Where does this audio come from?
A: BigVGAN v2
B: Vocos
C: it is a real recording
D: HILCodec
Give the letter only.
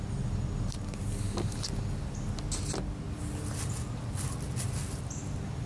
C